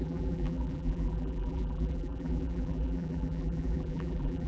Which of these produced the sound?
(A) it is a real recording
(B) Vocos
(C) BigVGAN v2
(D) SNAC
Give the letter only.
C